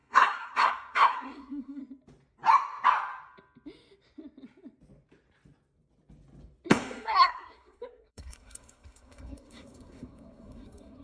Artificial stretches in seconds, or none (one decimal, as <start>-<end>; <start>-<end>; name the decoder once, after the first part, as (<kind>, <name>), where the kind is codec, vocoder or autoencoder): 0.0-1.8 (codec, SNAC); 6.7-11.0